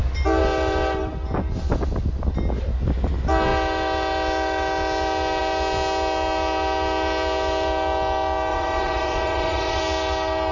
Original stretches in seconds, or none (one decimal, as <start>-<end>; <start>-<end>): 0.0-8.5; 9.8-10.5